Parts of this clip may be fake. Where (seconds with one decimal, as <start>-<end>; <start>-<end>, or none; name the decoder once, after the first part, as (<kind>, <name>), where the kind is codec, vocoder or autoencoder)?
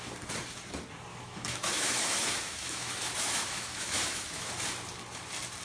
1.1-4.5 (autoencoder, DAC-VAE)